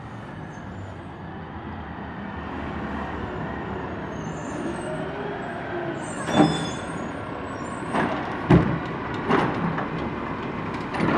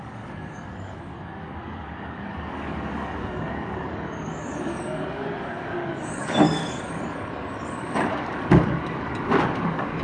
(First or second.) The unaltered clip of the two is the first